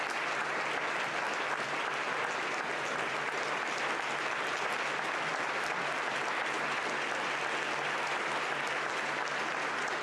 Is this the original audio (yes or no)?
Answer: yes